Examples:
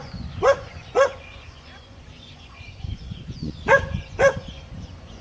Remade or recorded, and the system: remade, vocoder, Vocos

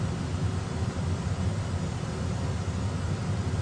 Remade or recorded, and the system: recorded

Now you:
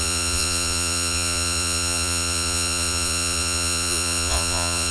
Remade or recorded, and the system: remade, vocoder, Vocos